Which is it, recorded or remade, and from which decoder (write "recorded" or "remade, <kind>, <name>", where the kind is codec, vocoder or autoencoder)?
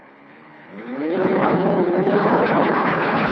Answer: remade, codec, HILCodec